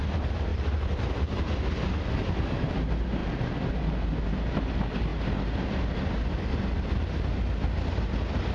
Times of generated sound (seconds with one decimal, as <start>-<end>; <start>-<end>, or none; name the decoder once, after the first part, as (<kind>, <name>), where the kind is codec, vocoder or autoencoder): 0.5-1.5 (vocoder, BigVGAN v2)